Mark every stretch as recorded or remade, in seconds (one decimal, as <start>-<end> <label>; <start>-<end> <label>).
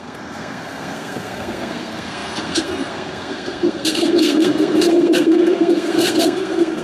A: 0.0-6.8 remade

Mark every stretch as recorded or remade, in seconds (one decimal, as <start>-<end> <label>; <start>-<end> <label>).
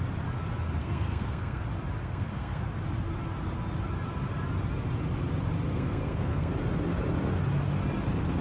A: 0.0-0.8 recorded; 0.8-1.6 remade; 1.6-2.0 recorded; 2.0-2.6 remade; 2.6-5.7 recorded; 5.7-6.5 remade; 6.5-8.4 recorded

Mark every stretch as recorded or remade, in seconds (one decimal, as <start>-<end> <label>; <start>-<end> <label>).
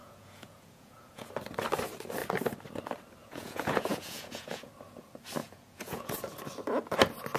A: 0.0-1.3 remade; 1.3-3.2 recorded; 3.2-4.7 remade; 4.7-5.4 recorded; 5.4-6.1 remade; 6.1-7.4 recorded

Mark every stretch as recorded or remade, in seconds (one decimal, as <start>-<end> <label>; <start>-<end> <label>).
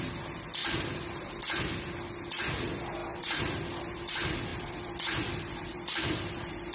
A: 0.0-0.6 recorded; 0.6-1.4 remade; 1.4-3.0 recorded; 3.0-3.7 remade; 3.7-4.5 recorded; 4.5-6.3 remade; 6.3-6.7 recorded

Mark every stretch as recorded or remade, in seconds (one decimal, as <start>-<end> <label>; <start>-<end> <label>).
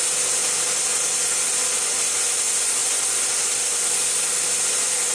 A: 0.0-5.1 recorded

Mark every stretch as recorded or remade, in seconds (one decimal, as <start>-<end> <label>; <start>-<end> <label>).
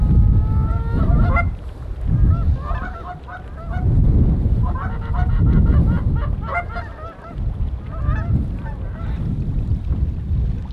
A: 0.0-1.2 recorded; 1.2-1.9 remade; 1.9-10.7 recorded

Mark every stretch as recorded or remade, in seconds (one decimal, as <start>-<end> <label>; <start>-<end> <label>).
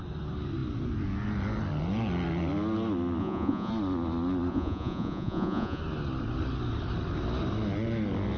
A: 0.0-3.2 recorded; 3.2-3.7 remade; 3.7-4.5 recorded; 4.5-5.8 remade; 5.8-8.4 recorded